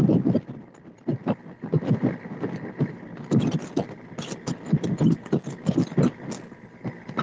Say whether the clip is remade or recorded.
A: recorded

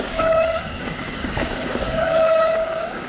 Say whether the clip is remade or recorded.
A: remade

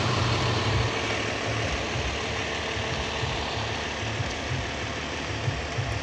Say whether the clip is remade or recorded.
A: recorded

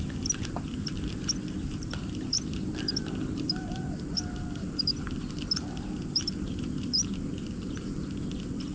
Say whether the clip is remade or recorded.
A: recorded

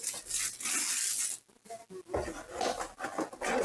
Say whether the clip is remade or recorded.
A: recorded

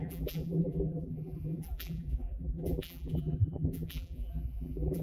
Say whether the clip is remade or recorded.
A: remade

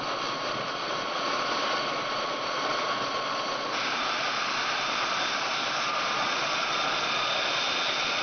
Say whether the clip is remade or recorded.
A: remade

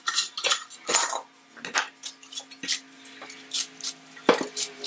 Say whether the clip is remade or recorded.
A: recorded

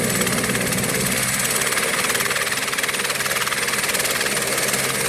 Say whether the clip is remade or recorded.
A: recorded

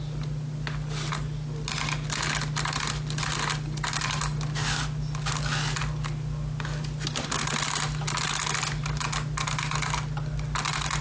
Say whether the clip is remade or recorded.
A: recorded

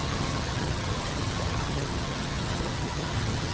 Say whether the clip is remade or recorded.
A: remade